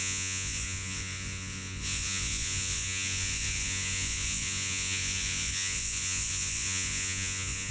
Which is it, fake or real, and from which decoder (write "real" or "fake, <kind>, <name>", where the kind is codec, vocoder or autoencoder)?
fake, vocoder, Vocos